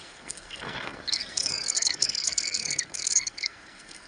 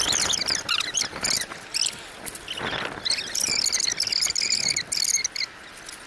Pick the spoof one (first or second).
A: first